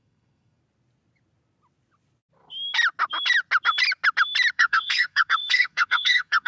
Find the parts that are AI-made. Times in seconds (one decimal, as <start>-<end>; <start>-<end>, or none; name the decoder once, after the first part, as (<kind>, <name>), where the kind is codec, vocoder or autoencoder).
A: 0.0-0.6 (codec, SNAC); 4.5-6.5